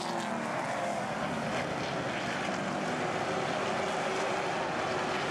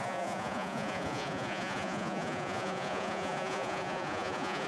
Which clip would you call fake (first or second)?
second